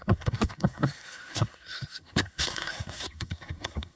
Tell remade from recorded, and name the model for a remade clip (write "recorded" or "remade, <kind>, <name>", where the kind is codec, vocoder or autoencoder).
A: remade, codec, SNAC